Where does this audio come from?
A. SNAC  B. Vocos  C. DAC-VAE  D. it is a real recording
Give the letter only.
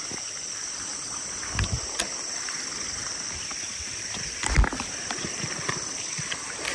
D